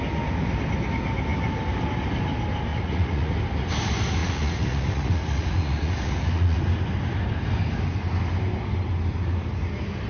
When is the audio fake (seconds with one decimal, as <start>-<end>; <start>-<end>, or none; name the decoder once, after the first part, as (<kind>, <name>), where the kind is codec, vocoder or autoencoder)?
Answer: 2.7-3.3 (vocoder, Vocos); 4.2-6.6